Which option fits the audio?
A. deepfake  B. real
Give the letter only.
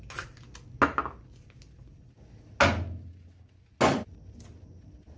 B